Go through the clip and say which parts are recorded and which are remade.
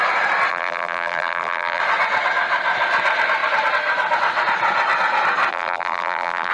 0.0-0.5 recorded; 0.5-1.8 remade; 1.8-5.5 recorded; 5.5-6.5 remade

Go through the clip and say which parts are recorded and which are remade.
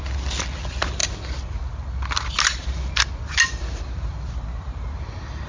0.0-5.5 recorded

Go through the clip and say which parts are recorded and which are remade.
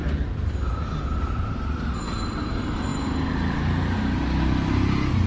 0.0-5.3 recorded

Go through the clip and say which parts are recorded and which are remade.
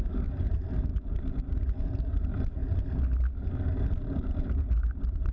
0.0-0.9 remade; 0.9-1.8 recorded; 1.8-2.6 remade; 2.6-3.8 recorded; 3.8-5.3 remade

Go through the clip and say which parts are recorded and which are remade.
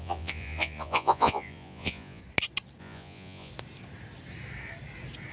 0.0-2.2 remade; 2.2-2.8 recorded; 2.8-3.5 remade; 3.5-5.3 recorded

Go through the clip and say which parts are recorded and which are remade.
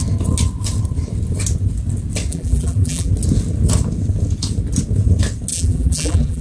0.0-2.3 recorded; 2.3-3.1 remade; 3.1-5.5 recorded; 5.5-6.4 remade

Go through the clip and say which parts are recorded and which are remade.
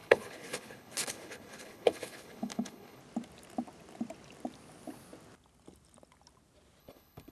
0.0-3.0 remade; 3.0-6.8 recorded; 6.8-7.3 remade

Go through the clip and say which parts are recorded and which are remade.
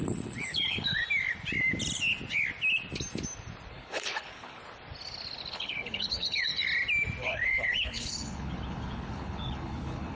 0.0-1.0 remade; 1.0-3.7 recorded; 3.7-4.6 remade; 4.6-5.5 recorded; 5.5-6.5 remade; 6.5-7.2 recorded; 7.2-10.1 remade